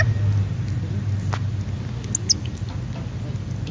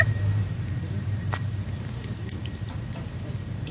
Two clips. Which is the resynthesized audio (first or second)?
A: second